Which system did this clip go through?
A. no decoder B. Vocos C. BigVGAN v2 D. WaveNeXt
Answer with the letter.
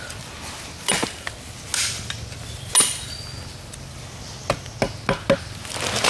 A